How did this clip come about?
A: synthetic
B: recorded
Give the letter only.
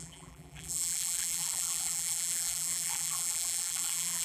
A